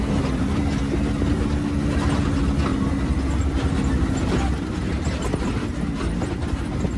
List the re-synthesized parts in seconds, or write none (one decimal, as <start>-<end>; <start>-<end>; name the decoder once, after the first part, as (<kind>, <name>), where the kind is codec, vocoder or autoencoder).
none